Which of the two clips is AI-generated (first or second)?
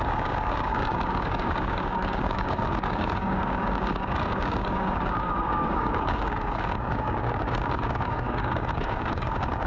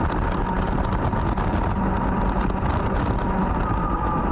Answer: first